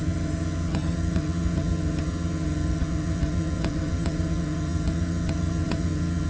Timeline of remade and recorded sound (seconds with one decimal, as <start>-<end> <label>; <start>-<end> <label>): 0.0-6.3 remade